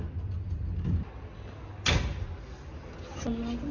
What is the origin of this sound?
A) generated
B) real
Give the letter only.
B